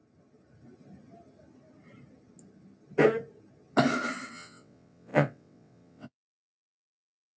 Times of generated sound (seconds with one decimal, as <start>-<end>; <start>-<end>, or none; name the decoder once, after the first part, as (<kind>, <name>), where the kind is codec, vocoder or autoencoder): 4.3-7.4 (vocoder, WaveNeXt)